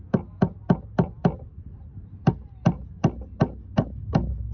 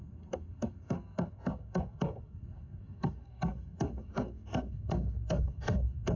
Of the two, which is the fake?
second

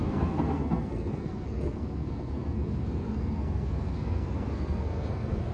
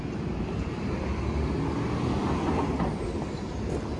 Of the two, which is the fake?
first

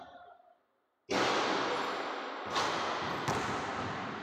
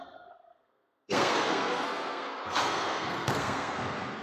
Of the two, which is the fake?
second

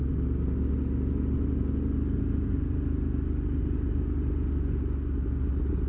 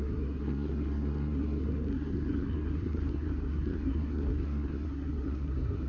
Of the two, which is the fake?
second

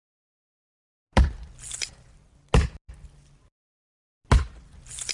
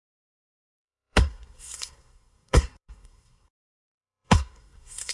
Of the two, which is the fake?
second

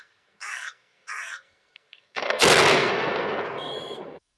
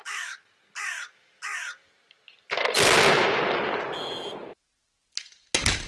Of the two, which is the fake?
first